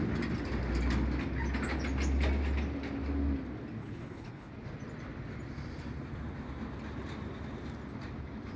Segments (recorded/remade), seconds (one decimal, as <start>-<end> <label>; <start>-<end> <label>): 0.0-3.8 recorded; 3.8-4.5 remade; 4.5-8.6 recorded